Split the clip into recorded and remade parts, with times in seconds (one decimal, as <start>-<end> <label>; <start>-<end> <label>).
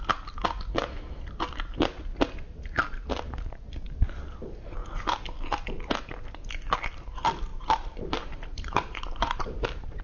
0.0-7.5 recorded; 7.5-10.0 remade